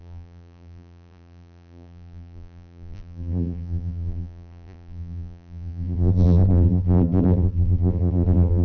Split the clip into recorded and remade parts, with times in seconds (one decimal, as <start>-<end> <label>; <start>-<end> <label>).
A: 0.0-8.6 remade